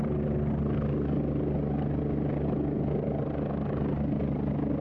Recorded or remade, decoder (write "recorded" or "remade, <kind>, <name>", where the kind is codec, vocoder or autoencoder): recorded